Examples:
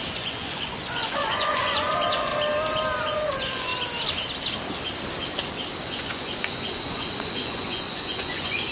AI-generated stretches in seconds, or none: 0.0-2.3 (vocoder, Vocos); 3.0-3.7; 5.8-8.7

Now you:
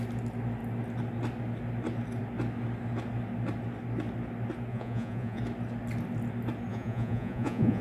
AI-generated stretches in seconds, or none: 4.7-5.4 (vocoder, Vocos); 6.7-7.8

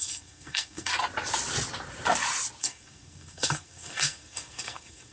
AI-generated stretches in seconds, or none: 0.0-0.9 (codec, SNAC); 2.6-5.1

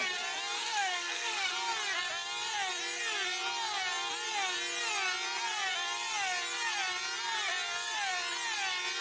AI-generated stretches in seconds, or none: 0.6-1.5 (codec, SNAC)

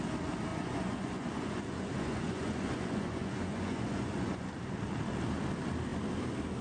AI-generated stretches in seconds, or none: 0.5-4.5 (vocoder, Vocos)